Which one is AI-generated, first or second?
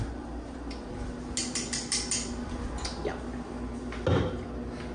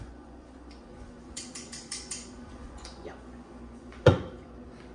second